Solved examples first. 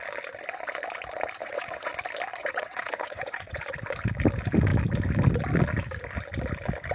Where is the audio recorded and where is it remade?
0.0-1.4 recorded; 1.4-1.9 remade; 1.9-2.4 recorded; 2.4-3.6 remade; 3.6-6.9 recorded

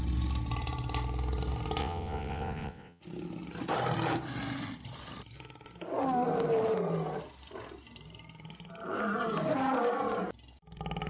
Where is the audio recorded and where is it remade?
0.0-1.8 recorded; 1.8-3.0 remade; 3.0-11.1 recorded